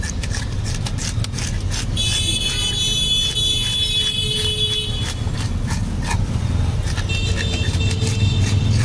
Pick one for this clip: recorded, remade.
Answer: recorded